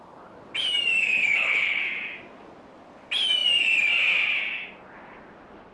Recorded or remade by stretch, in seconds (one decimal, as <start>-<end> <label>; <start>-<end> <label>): 0.0-1.1 recorded; 1.1-1.8 remade; 1.8-5.7 recorded